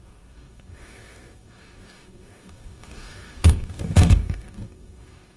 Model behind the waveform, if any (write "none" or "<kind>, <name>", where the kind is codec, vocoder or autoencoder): codec, DAC